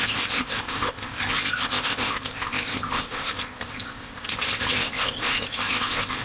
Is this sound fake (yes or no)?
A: yes